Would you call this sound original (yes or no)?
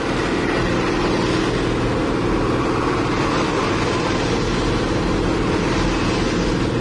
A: yes